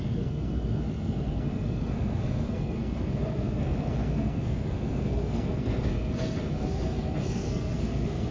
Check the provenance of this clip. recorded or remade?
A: remade